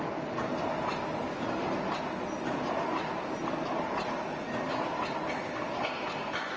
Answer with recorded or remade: recorded